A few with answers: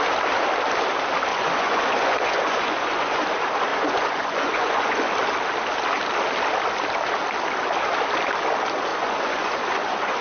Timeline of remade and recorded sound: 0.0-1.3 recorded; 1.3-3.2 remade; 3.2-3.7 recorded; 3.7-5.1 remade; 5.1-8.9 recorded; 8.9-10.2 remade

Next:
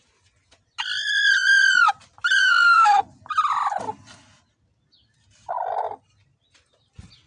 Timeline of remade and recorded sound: 0.0-2.4 recorded; 2.4-3.0 remade; 3.0-7.3 recorded